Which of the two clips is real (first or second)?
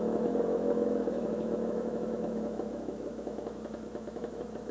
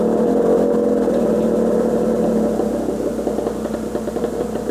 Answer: second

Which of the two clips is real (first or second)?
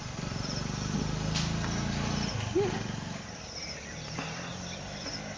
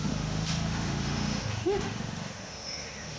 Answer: first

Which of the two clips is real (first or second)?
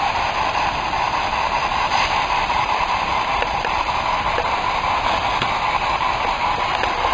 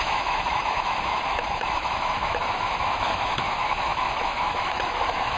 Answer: first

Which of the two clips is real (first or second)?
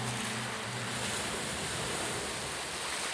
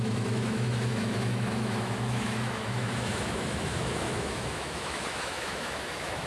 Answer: first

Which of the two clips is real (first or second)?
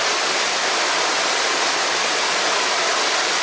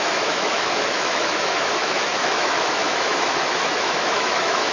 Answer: first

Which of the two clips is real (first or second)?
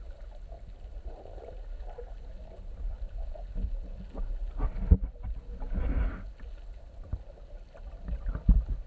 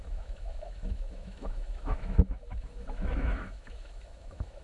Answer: first